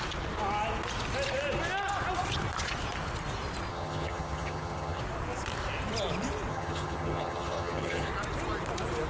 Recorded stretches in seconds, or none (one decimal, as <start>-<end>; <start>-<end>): 0.0-3.7; 5.0-6.5; 8.1-9.1